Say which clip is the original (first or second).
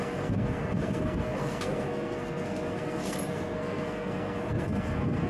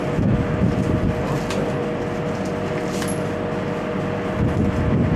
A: second